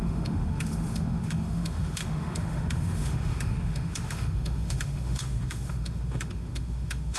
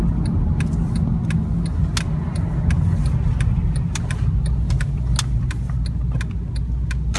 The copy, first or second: first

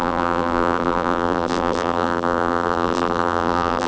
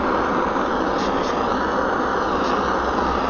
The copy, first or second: first